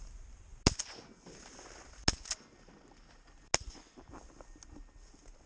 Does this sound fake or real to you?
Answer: real